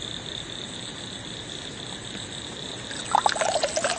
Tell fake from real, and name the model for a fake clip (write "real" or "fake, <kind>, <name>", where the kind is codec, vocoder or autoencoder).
real